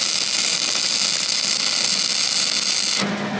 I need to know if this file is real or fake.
real